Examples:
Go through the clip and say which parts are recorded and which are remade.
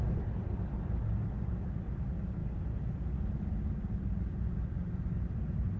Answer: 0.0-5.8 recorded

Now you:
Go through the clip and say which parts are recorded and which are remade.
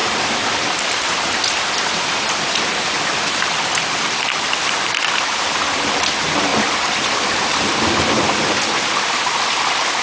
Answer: 0.0-5.0 remade; 5.0-6.5 recorded; 6.5-7.4 remade; 7.4-10.0 recorded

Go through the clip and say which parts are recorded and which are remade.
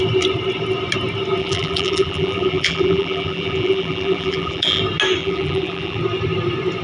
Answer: 0.0-1.4 recorded; 1.4-4.8 remade; 4.8-5.2 recorded; 5.2-6.0 remade; 6.0-6.8 recorded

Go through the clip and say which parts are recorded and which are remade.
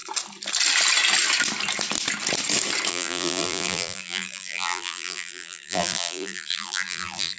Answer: 0.0-2.9 recorded; 2.9-7.4 remade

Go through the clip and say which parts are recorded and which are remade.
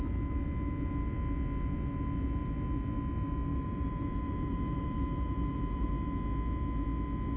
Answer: 0.0-3.5 recorded; 3.5-5.9 remade; 5.9-7.4 recorded